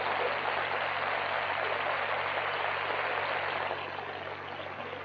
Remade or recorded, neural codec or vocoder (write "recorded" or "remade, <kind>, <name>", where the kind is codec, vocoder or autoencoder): recorded